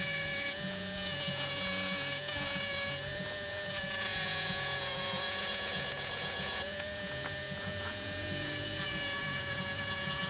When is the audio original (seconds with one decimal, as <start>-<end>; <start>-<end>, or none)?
none